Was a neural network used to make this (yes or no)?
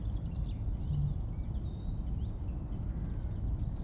no